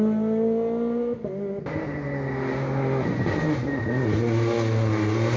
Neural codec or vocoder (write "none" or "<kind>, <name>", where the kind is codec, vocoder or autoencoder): none